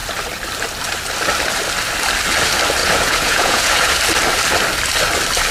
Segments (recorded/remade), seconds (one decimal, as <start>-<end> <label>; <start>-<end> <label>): 0.0-2.8 recorded; 2.8-4.0 remade; 4.0-5.5 recorded